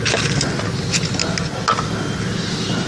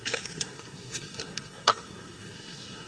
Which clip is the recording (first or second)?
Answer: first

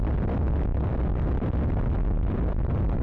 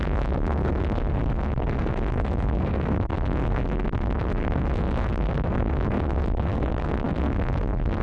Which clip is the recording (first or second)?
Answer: first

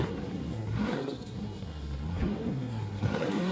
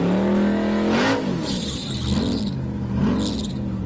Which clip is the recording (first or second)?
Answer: second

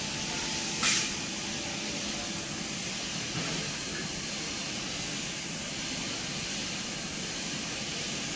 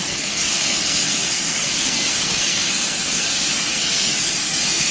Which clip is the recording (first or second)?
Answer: first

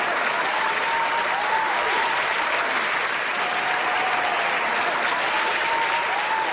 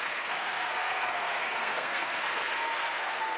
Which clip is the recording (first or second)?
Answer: first